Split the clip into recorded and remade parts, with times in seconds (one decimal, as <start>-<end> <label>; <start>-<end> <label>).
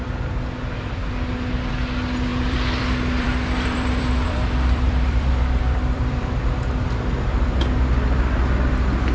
0.0-2.3 recorded; 2.3-7.1 remade; 7.1-9.1 recorded